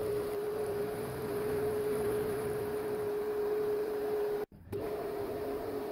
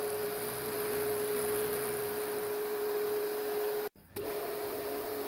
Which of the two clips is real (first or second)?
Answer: second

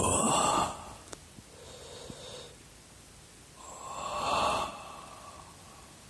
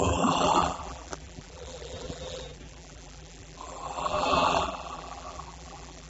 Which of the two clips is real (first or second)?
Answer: first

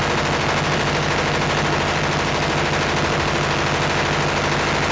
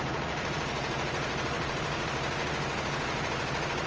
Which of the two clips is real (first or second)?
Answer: first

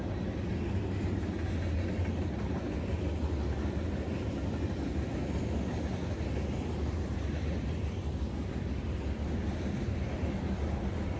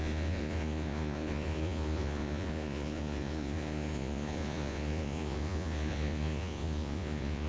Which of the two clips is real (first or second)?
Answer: first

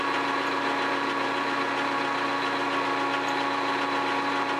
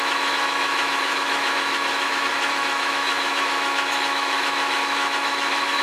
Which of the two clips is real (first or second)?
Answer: first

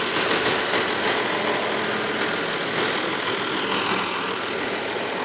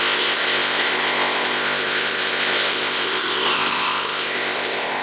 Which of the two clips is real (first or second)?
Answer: first